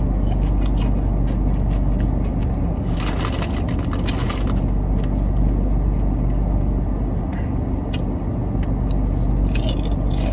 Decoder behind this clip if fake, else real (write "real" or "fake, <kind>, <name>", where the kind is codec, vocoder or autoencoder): real